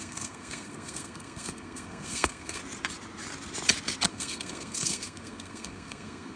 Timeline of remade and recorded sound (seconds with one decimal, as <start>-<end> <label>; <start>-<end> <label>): 0.0-2.6 remade; 2.6-4.1 recorded; 4.1-6.4 remade